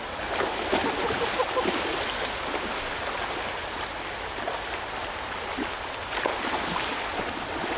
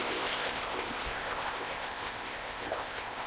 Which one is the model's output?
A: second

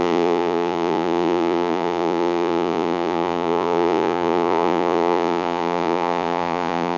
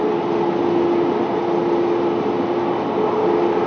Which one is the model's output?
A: first